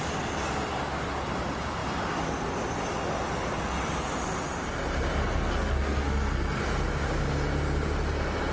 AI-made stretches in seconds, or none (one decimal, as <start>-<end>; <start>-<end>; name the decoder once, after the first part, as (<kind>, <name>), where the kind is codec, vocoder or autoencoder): 5.2-6.6 (codec, SNAC)